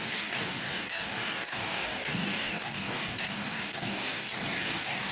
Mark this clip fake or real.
fake